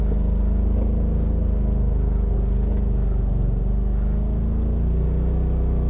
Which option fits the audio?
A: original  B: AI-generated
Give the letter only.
A